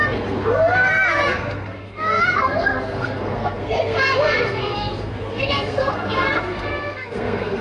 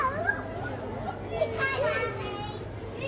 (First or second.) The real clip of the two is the second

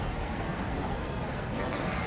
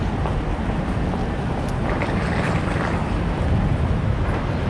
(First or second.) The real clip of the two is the second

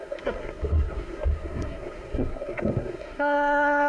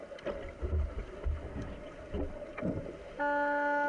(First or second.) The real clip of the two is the second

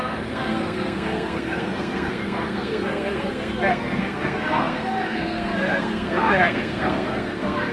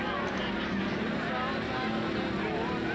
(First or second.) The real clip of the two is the second